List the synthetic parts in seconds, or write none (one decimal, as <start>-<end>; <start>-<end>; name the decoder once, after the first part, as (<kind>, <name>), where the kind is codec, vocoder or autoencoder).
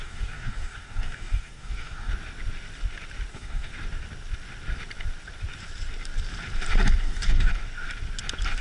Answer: 0.0-2.1 (codec, DAC); 3.3-3.7; 7.0-7.5